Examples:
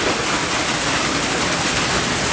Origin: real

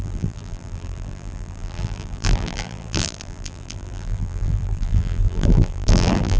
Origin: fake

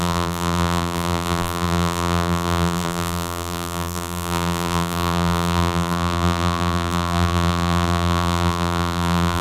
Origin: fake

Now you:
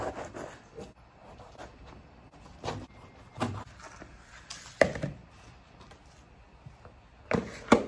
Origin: real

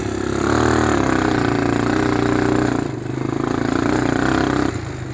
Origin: real